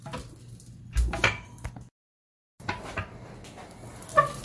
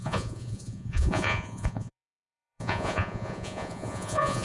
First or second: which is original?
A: first